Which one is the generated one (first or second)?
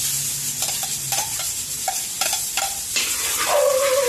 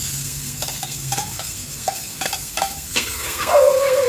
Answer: second